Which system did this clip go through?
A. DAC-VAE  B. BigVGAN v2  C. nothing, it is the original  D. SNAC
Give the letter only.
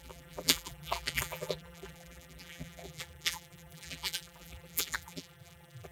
B